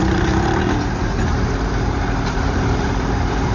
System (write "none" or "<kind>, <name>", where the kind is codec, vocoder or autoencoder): vocoder, BigVGAN v2